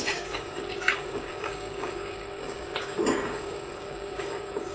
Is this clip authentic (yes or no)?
no